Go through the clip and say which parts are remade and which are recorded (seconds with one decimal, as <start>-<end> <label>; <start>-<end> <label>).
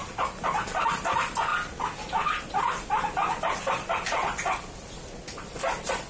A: 0.0-6.1 recorded